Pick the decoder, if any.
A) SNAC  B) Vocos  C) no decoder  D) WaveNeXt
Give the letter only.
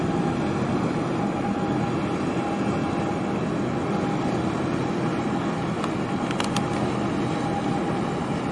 C